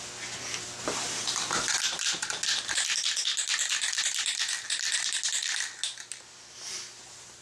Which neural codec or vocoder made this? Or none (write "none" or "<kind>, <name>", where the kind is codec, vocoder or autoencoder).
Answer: none